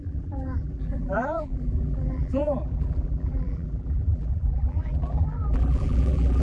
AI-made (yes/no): yes